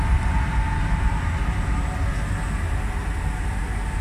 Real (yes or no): yes